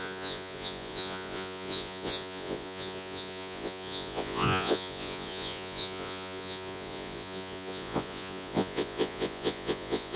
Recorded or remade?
remade